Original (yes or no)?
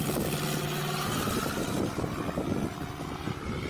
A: yes